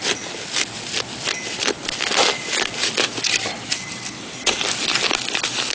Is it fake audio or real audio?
real